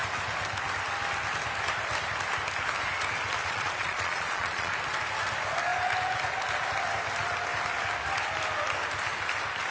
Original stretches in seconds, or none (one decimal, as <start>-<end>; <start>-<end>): 0.0-3.4; 4.7-9.7